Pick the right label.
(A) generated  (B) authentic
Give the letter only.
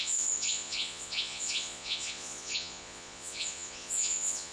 A